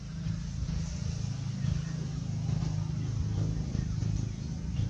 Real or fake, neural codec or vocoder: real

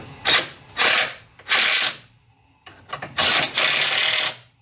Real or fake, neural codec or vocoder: real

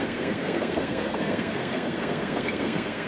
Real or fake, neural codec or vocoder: fake, codec, SNAC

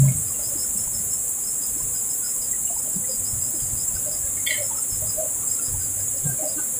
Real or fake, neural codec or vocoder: real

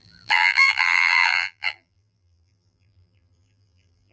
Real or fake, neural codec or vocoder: fake, vocoder, BigVGAN v2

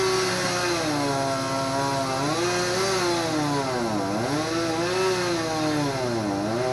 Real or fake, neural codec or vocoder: real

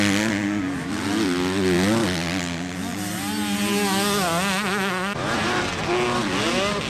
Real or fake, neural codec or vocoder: real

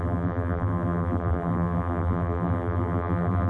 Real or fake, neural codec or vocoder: fake, vocoder, BigVGAN v2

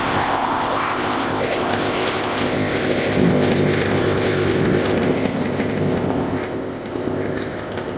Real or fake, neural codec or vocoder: fake, codec, ZipCodec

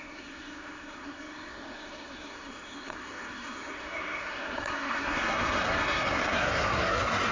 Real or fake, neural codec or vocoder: fake, codec, SNAC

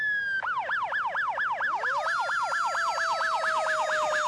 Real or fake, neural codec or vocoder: real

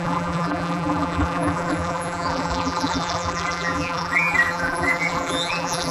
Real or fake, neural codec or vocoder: fake, vocoder, BigVGAN v2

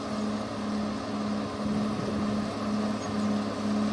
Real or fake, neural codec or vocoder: real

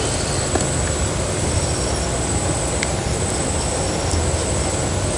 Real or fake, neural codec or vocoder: real